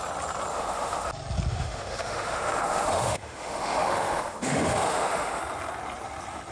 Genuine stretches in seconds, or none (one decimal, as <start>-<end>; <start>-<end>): 0.0-0.5; 1.1-1.5; 5.4-6.5